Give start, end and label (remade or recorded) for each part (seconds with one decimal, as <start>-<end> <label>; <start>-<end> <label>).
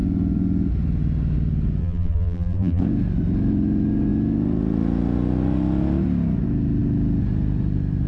0.0-1.8 recorded; 1.8-2.8 remade; 2.8-8.1 recorded